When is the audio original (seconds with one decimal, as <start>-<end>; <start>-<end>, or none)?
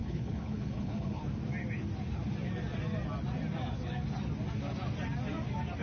1.2-5.8